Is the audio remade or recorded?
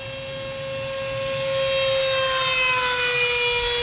recorded